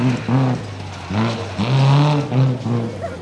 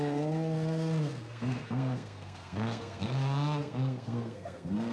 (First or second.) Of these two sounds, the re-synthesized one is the second